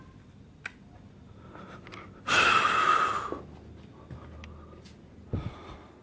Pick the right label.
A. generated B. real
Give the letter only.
B